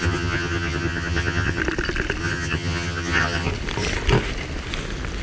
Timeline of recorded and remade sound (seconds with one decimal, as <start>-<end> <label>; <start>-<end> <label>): 0.0-1.6 remade; 1.6-2.2 recorded; 2.2-3.5 remade; 3.5-5.2 recorded